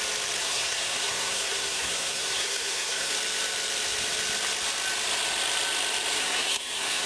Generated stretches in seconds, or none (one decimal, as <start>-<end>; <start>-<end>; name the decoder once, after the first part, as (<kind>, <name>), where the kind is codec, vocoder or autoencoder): 0.4-3.1 (codec, SNAC); 6.2-7.1